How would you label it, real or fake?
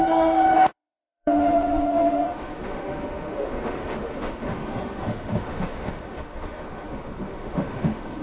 fake